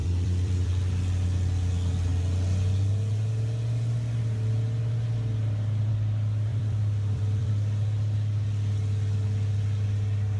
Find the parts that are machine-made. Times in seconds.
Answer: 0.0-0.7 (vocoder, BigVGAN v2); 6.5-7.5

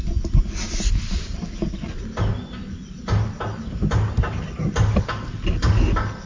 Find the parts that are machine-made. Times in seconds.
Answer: none